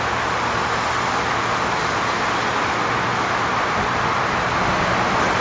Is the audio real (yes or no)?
yes